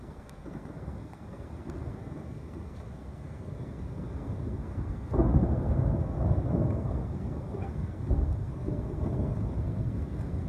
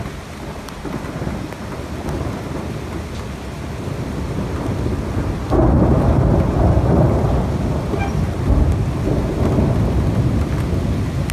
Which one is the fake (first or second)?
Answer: first